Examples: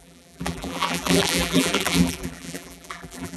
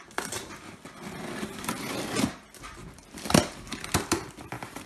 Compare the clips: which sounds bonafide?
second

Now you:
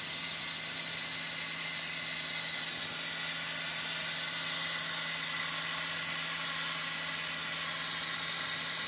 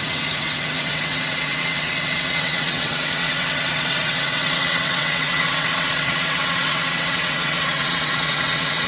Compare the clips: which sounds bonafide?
first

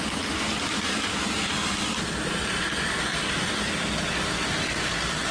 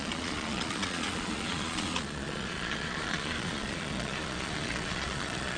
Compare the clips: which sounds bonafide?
first